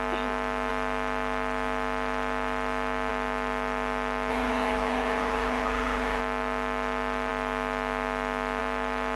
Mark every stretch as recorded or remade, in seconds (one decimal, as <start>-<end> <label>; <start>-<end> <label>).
0.0-4.3 recorded; 4.3-6.2 remade; 6.2-9.2 recorded